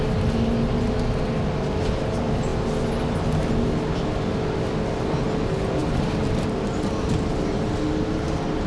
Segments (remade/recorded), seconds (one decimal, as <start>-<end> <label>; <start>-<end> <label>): 0.0-8.7 recorded